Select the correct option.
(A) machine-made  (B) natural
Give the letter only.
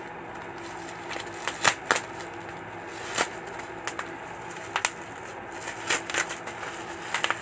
B